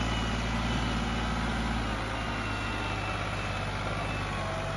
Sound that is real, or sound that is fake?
real